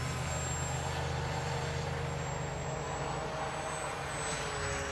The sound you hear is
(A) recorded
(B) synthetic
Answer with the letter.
A